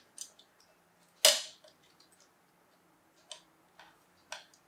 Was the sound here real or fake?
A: real